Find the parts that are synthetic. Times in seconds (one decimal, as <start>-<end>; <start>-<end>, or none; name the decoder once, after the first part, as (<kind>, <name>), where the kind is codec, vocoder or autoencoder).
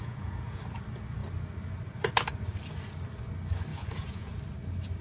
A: 0.0-0.6 (vocoder, Vocos); 3.7-4.3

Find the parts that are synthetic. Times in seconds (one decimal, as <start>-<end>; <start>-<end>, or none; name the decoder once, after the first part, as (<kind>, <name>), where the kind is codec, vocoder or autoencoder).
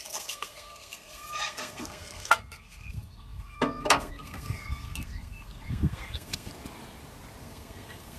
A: 0.0-6.5 (codec, SNAC); 7.4-8.2